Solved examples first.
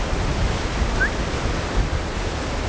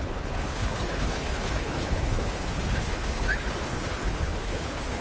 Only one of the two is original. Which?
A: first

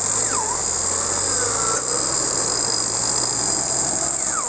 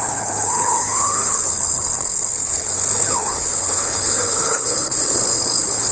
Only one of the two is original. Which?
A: first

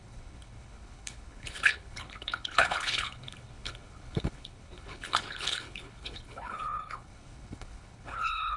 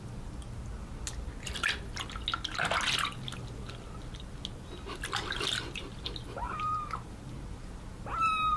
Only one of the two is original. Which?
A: second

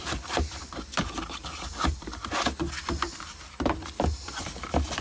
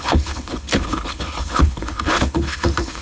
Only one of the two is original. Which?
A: first